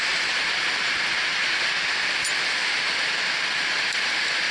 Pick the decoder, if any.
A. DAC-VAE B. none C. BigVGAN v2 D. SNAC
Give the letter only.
B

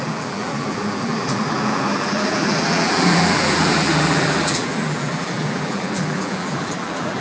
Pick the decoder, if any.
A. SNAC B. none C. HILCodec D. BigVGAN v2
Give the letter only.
D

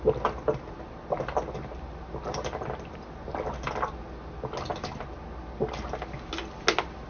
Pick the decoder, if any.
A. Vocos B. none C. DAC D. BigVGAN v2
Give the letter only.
B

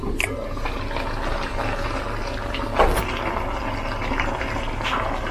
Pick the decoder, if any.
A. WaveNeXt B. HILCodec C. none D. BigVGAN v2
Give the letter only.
C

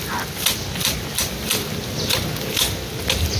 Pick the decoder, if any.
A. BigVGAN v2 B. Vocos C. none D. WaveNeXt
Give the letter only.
C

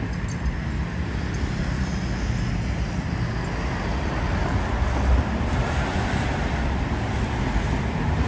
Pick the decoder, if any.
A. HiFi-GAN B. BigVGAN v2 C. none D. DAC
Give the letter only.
C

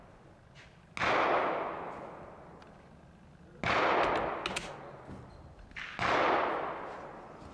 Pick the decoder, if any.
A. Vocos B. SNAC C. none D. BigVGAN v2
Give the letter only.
C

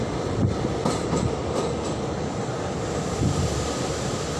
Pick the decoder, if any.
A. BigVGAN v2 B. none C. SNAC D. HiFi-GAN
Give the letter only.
A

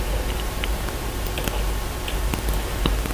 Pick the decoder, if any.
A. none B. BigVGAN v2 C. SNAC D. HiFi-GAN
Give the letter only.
A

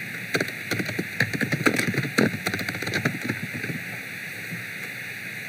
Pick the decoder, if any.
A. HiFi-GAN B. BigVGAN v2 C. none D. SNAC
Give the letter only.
B